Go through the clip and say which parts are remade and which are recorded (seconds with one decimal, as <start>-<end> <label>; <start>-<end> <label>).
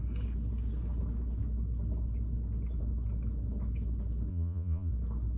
0.0-4.3 recorded; 4.3-4.9 remade; 4.9-5.4 recorded